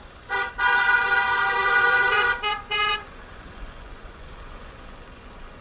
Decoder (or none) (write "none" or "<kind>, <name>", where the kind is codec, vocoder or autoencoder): vocoder, Vocos